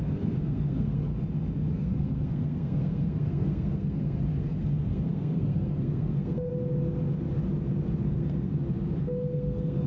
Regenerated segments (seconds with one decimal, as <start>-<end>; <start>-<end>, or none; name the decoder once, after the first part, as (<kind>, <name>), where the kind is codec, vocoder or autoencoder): 0.0-1.1 (codec, SNAC); 1.7-6.5; 8.1-8.5; 9.0-9.9